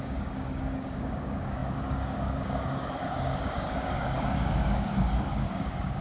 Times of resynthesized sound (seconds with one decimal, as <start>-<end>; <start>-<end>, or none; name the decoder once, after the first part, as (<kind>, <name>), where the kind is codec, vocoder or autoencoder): 0.0-6.0 (codec, DAC)